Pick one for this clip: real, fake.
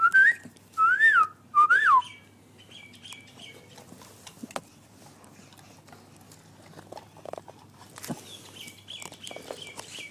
real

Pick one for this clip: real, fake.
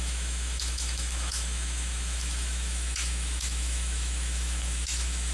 fake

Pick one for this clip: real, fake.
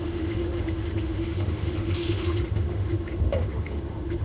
fake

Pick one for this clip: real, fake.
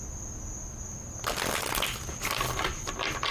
real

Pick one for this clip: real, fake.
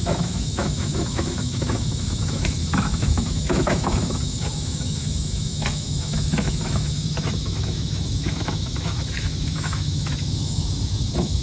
fake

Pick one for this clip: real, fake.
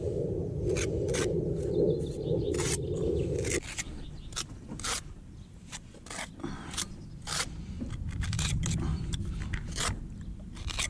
real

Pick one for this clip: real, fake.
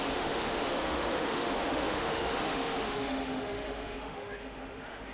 fake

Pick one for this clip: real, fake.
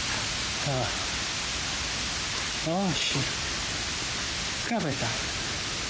real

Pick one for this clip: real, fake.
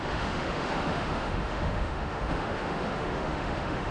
fake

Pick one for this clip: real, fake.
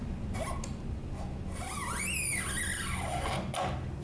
real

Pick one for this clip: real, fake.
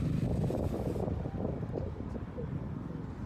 real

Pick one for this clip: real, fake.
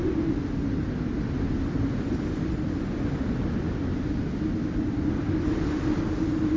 real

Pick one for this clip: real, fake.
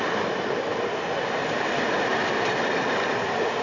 real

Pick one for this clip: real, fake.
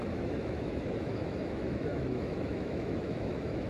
fake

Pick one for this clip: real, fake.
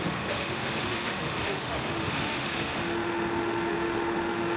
fake